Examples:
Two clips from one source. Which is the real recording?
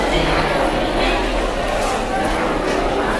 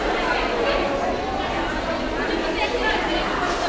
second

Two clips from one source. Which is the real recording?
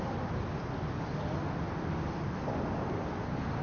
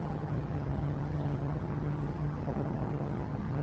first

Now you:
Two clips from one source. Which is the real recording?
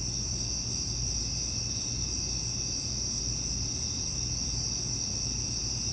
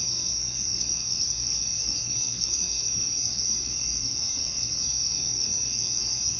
first